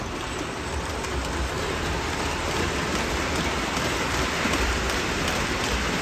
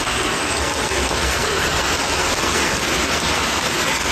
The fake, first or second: second